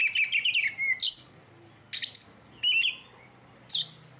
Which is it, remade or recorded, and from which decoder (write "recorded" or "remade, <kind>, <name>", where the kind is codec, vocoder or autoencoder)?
recorded